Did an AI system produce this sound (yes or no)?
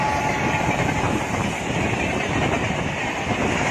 no